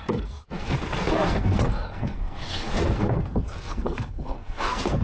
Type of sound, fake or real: fake